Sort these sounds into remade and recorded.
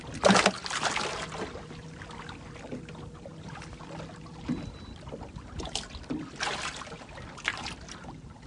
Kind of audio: recorded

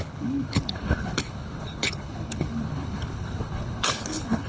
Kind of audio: remade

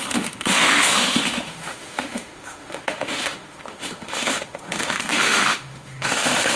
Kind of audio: remade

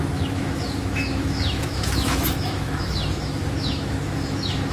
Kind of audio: remade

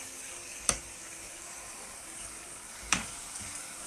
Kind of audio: remade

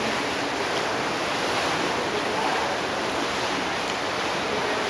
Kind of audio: recorded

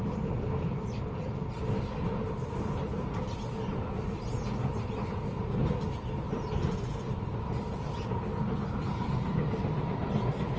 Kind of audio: recorded